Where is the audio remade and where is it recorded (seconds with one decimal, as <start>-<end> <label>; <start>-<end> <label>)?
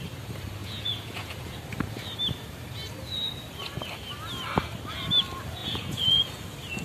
0.0-0.6 recorded; 0.6-1.6 remade; 1.6-5.6 recorded; 5.6-6.3 remade; 6.3-6.8 recorded